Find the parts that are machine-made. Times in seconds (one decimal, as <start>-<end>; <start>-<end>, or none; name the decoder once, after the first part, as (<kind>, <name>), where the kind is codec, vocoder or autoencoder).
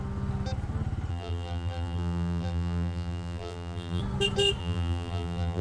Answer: 1.1-4.0 (vocoder, BigVGAN v2); 4.6-5.6